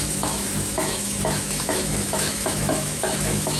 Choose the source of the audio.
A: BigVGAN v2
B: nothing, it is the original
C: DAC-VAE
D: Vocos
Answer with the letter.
C